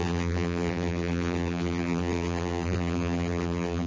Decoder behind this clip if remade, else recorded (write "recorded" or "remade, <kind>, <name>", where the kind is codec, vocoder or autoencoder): remade, vocoder, BigVGAN v2